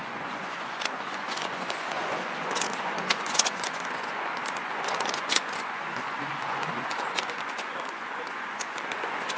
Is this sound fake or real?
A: fake